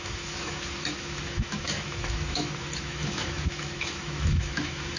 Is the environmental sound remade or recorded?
remade